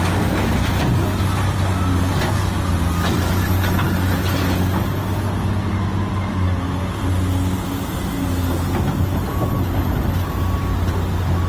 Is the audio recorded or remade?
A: recorded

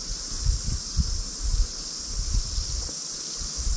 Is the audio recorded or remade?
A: recorded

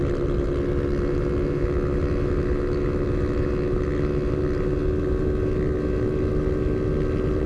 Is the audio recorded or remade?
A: recorded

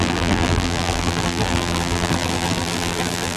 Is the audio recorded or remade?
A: remade